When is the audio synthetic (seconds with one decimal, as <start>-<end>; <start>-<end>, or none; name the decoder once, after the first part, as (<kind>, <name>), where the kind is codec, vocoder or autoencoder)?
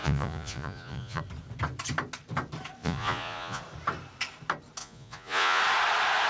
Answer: 0.0-1.2 (vocoder, Vocos); 2.8-3.6; 4.8-5.6